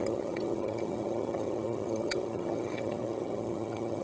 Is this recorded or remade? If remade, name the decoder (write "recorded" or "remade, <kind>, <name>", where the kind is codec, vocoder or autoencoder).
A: remade, vocoder, HiFi-GAN